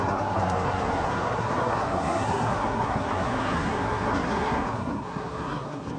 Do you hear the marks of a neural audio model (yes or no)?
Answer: yes